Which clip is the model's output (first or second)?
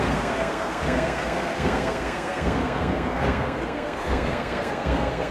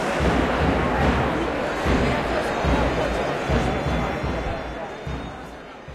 first